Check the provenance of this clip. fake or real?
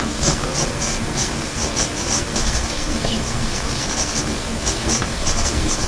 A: fake